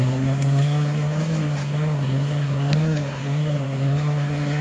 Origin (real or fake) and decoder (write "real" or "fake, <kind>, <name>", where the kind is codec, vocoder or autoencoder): fake, codec, SNAC